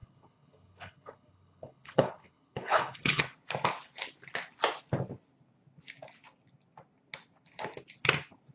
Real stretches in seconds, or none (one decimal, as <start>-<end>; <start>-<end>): 3.2-8.5